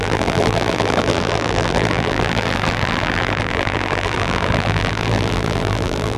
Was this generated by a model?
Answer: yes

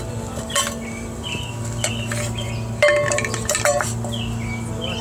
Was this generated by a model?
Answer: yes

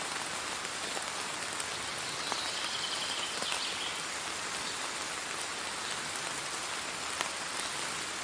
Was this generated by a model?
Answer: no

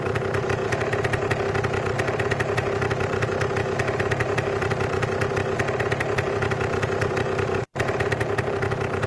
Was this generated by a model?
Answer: yes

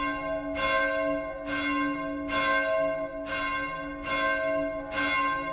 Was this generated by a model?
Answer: no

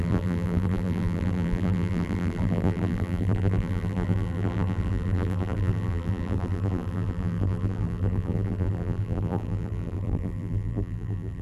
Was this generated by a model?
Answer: yes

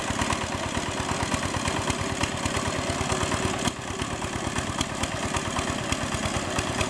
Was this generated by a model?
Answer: no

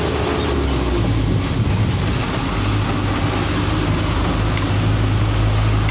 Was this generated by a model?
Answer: no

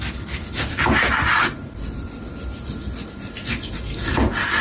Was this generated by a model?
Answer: no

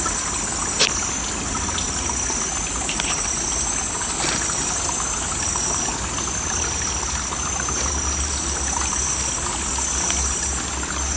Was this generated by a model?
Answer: no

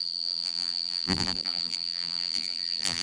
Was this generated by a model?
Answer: yes